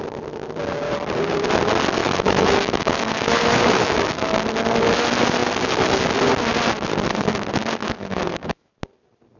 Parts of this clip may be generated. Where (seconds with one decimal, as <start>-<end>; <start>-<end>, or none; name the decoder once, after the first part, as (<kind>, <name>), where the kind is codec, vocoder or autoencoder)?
2.0-4.1 (autoencoder, DAC-VAE); 7.8-8.7